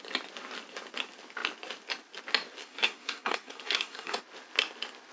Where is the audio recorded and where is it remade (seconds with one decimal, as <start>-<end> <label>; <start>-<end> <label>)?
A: 0.0-2.6 recorded; 2.6-4.2 remade; 4.2-5.1 recorded